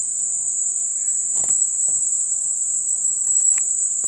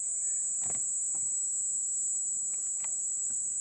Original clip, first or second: second